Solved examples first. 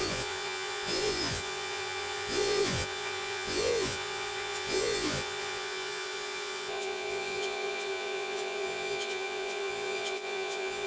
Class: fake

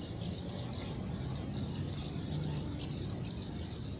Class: real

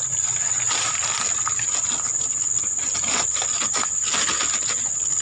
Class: real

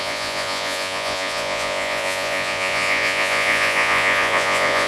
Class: fake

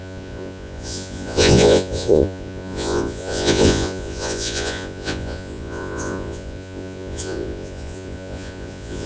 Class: fake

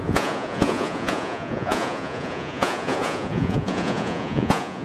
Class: fake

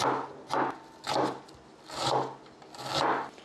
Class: real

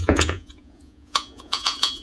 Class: fake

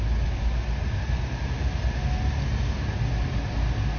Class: real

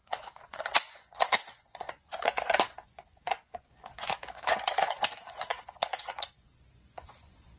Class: fake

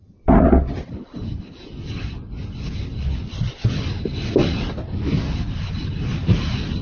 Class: real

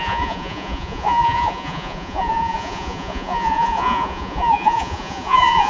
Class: fake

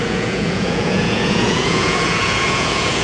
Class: fake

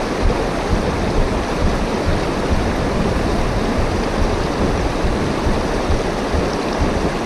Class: real